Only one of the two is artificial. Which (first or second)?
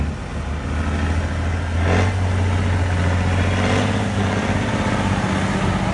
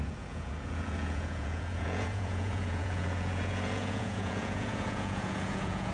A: second